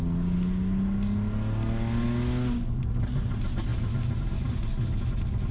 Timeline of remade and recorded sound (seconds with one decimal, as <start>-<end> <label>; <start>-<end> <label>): 0.0-5.5 recorded